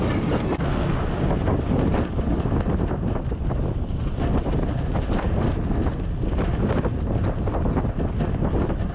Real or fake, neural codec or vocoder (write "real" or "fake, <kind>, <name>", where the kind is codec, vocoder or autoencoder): real